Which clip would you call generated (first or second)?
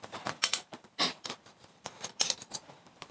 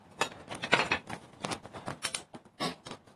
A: first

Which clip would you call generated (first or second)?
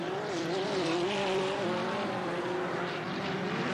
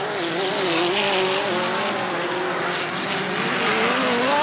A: first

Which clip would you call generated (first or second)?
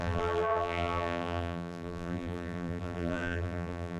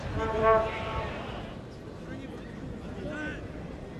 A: first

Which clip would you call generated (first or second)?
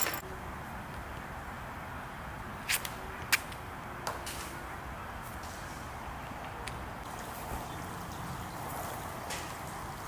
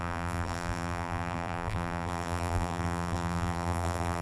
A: second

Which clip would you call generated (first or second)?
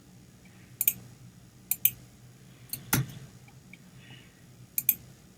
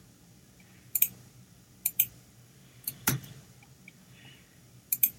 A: second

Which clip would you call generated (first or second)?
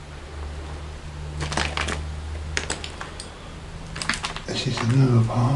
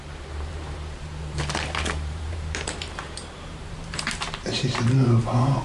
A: second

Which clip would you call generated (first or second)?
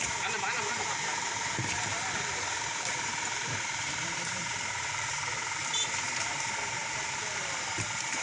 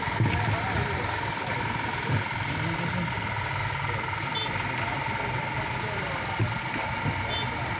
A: first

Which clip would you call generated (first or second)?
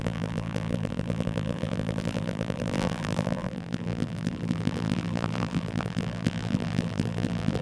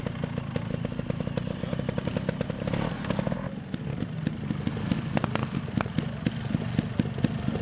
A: first